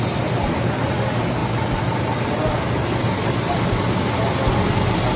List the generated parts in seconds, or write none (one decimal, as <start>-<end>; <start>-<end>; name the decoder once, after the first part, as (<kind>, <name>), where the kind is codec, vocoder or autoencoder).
none